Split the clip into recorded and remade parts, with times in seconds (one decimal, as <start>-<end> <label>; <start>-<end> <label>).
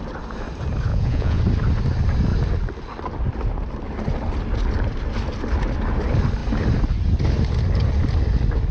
0.0-0.9 recorded; 0.9-1.4 remade; 1.4-8.7 recorded